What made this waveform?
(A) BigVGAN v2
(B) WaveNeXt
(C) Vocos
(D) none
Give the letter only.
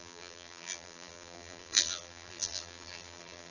A